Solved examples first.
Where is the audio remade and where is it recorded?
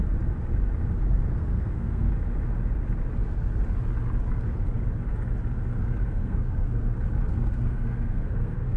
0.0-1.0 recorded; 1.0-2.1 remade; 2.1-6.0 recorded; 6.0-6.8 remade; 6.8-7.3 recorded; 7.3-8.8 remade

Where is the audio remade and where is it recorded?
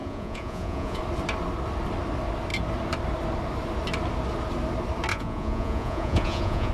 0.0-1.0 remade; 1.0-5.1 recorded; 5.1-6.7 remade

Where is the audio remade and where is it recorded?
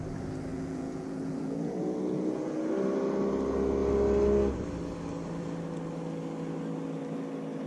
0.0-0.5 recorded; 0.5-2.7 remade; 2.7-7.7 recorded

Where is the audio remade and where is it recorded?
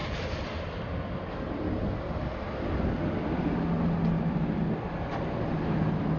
0.0-6.2 recorded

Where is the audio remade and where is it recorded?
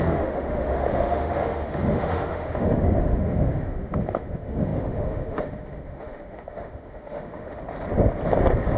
0.0-7.6 remade; 7.6-8.8 recorded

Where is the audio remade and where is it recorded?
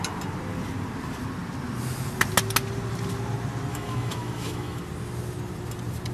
0.0-3.7 recorded; 3.7-4.8 remade; 4.8-6.1 recorded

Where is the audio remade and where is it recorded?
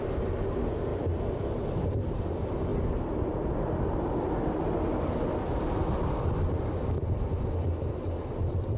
0.0-8.8 recorded